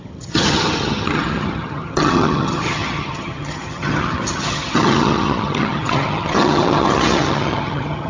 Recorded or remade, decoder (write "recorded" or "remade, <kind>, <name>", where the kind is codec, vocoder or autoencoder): remade, vocoder, HiFi-GAN